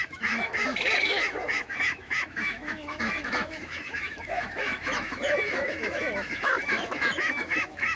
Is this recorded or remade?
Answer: remade